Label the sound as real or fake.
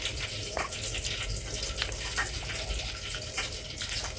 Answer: real